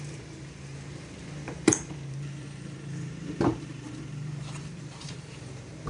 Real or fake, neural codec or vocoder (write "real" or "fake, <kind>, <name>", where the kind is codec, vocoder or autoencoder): fake, vocoder, BigVGAN v2